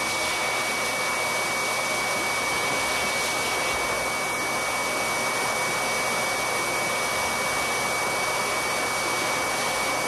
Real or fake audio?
real